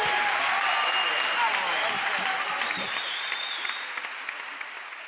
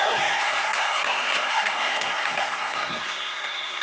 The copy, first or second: second